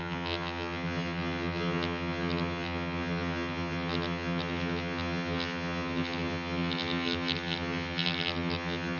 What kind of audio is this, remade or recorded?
remade